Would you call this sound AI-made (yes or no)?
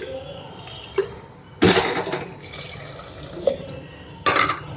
no